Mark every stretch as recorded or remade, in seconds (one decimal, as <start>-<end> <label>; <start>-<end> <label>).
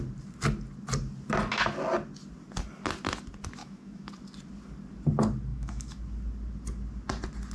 0.0-3.6 recorded; 3.6-4.1 remade; 4.1-5.5 recorded; 5.5-6.0 remade; 6.0-7.5 recorded